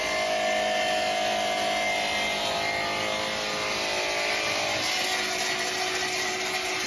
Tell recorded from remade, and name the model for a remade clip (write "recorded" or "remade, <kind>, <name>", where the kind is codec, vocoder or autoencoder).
recorded